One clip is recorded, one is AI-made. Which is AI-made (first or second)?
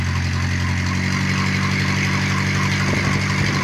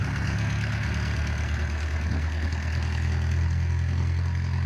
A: second